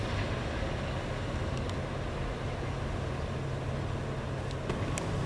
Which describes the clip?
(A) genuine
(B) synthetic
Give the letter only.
A